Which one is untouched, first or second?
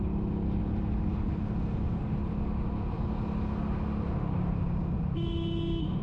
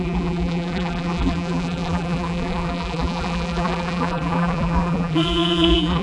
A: first